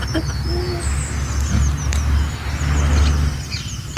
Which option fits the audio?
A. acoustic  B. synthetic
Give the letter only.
A